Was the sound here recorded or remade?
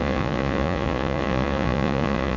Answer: remade